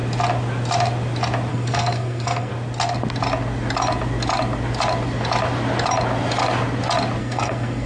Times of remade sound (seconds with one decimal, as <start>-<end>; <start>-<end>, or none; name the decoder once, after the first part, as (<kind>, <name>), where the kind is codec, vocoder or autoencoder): 1.5-2.5 (codec, SNAC); 7.2-7.9